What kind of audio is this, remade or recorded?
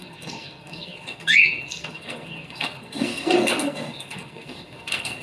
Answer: remade